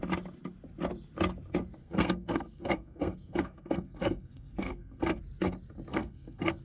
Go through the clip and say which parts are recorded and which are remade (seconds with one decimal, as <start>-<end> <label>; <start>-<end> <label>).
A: 0.0-1.8 recorded; 1.8-5.2 remade; 5.2-5.9 recorded; 5.9-6.6 remade